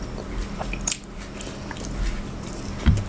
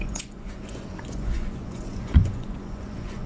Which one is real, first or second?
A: first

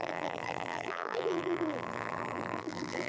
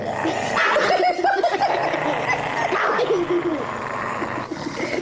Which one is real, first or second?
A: second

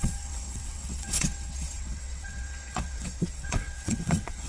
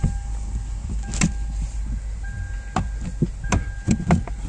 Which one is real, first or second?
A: second